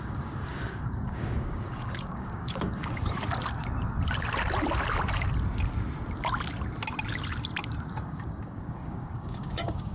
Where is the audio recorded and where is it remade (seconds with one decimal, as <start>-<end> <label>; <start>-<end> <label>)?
0.0-3.2 remade; 3.2-7.9 recorded; 7.9-9.9 remade